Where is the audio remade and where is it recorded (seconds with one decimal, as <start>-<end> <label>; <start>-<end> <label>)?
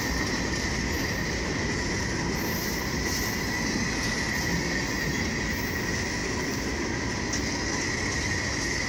0.0-8.9 recorded